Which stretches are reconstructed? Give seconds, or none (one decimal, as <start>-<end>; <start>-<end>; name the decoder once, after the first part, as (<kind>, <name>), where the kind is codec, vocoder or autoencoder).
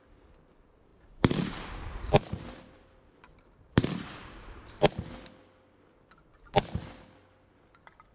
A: 0.9-4.9 (vocoder, BigVGAN v2)